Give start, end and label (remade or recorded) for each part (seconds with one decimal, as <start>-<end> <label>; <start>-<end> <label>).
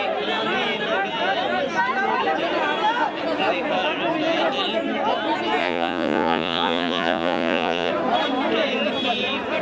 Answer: 0.0-5.6 recorded; 5.6-7.9 remade; 7.9-9.6 recorded